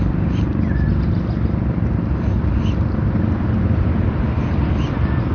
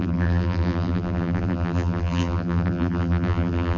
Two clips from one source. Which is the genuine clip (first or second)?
first